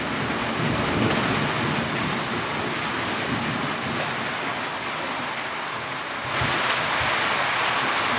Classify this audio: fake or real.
real